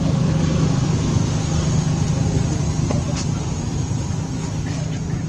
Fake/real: real